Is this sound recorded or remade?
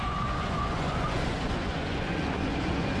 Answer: remade